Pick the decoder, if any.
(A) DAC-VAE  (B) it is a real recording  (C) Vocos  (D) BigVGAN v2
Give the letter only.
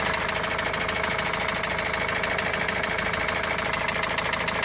B